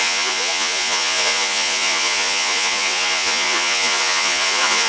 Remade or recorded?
remade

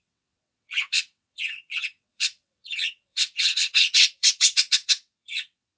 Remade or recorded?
remade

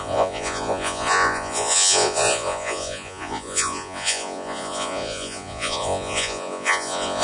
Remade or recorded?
remade